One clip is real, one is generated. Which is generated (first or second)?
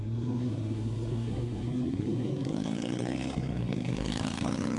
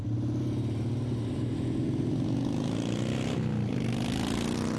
first